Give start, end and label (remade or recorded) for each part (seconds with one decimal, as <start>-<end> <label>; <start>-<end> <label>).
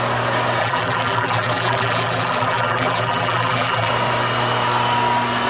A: 0.0-0.6 recorded; 0.6-3.9 remade; 3.9-5.5 recorded